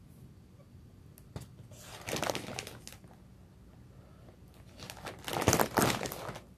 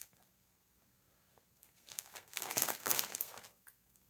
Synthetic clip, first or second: second